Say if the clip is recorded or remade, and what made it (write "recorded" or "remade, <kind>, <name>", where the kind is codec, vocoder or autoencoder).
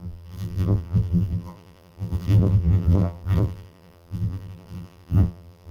remade, vocoder, BigVGAN v2